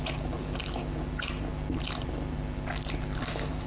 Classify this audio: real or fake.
real